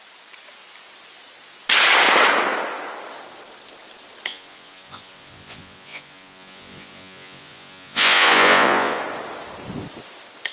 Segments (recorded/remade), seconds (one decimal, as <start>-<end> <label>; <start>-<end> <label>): 0.0-4.3 recorded; 4.3-9.0 remade; 9.0-10.5 recorded